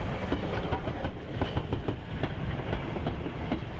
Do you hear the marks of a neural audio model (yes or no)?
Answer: no